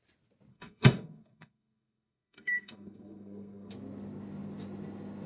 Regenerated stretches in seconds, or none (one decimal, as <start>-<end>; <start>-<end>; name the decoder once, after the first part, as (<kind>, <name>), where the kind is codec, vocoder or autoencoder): 0.5-3.7 (codec, SNAC)